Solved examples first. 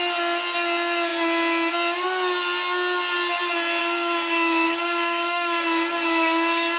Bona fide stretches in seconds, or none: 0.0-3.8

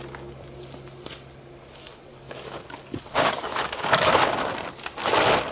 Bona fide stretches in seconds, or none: 0.0-2.1; 4.2-5.5

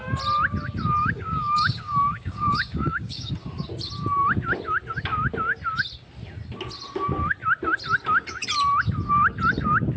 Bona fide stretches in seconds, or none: 0.0-1.0; 3.3-10.0

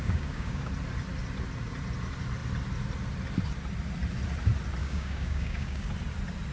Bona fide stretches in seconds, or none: 0.7-4.8; 5.9-6.5

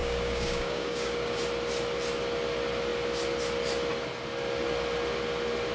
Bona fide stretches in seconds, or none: 1.4-5.7